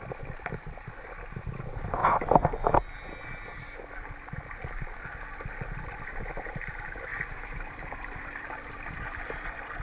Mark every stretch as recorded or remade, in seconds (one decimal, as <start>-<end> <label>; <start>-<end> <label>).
0.0-2.0 remade; 2.0-6.0 recorded; 6.0-7.1 remade; 7.1-7.8 recorded; 7.8-9.8 remade